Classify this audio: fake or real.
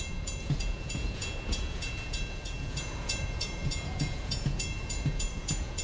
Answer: fake